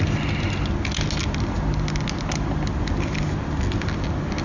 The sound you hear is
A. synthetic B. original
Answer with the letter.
B